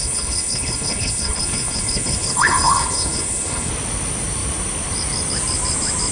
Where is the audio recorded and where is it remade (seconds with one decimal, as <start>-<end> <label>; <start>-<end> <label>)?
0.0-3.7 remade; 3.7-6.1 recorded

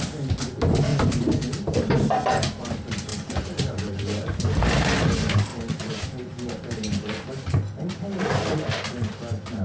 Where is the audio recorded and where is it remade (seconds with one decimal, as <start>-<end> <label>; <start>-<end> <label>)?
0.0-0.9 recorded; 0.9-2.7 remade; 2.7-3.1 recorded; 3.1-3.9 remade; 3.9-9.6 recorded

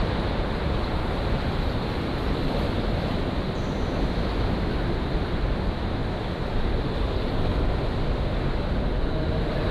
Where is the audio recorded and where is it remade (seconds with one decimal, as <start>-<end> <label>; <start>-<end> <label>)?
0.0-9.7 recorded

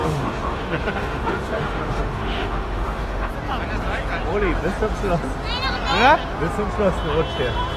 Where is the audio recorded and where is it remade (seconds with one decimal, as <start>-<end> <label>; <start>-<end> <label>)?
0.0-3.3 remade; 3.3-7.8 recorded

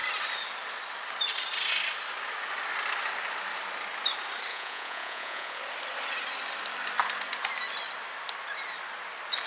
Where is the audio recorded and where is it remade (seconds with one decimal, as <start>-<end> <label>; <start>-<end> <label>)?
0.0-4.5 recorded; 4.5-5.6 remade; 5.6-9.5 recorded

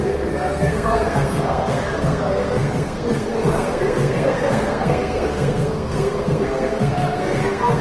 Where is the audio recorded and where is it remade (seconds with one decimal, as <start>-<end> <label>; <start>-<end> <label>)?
0.0-7.8 remade